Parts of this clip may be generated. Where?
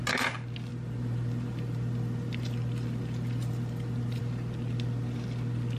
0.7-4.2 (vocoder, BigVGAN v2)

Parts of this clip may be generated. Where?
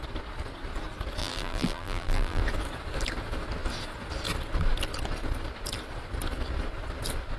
1.2-2.4 (vocoder, BigVGAN v2)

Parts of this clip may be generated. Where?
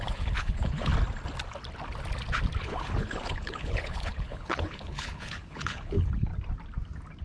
0.0-0.9 (codec, HILCodec); 2.6-6.3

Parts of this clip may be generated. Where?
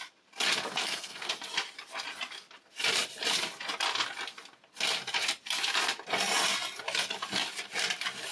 0.7-1.3 (codec, SNAC)